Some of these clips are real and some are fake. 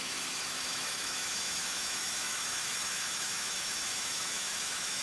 fake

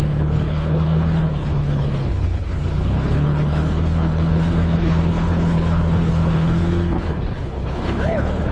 fake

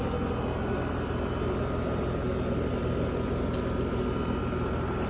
real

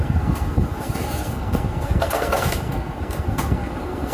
fake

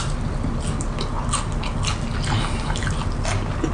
real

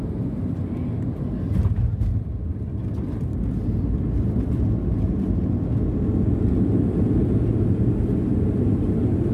real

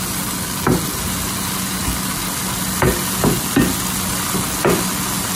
real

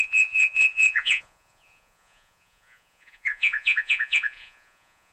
fake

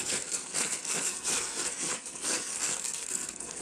fake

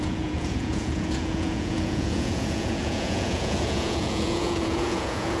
fake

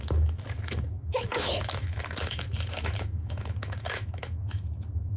fake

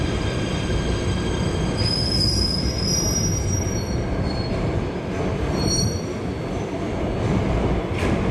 real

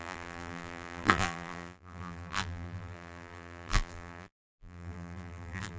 fake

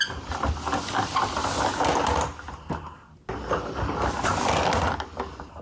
real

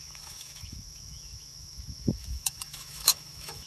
fake